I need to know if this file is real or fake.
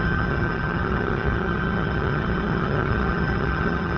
fake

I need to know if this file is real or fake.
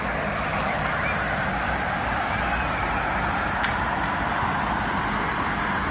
real